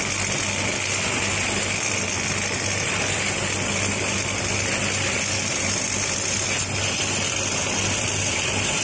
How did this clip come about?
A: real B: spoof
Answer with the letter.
A